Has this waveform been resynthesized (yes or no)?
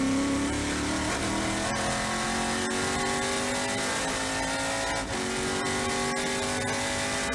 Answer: no